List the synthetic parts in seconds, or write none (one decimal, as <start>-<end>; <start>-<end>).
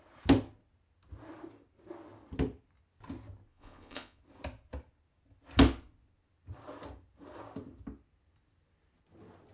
3.5-4.2